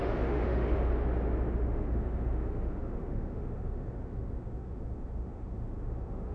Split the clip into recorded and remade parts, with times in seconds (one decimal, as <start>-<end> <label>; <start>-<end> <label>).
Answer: 0.0-0.9 remade; 0.9-1.5 recorded; 1.5-6.3 remade

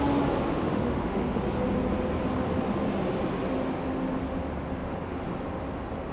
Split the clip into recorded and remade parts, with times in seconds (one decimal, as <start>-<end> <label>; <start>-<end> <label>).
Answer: 0.0-0.5 recorded; 0.5-1.4 remade; 1.4-6.1 recorded

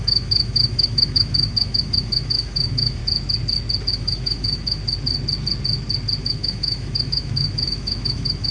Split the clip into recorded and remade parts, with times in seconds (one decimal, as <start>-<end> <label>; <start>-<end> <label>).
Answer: 0.0-3.0 remade; 3.0-3.9 recorded; 3.9-4.8 remade; 4.8-6.2 recorded; 6.2-8.5 remade